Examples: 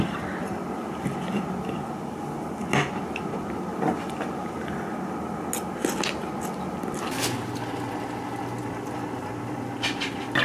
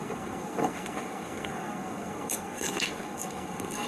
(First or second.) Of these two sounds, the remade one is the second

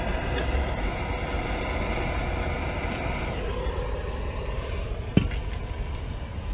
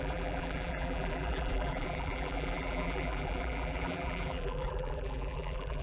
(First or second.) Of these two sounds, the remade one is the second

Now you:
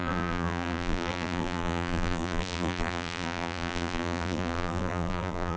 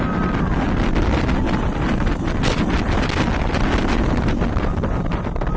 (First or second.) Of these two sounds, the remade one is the first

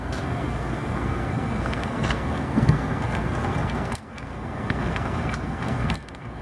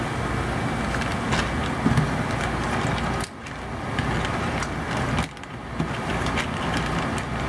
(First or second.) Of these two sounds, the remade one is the first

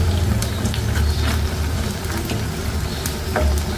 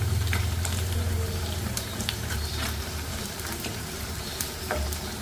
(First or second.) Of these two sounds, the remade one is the second